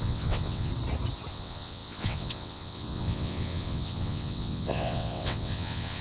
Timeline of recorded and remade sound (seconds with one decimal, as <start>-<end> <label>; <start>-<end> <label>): 0.0-0.7 remade; 0.7-1.3 recorded; 1.3-6.0 remade